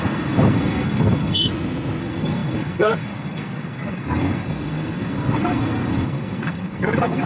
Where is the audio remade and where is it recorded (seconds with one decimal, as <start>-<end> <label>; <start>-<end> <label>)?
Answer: 0.0-1.5 remade; 1.5-2.0 recorded; 2.0-7.3 remade